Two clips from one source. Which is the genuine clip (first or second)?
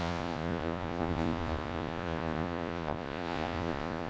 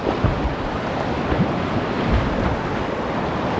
second